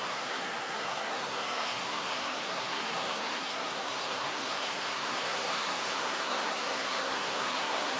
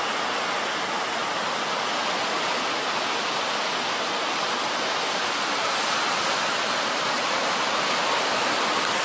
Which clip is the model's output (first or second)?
first